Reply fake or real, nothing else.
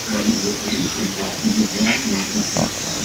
real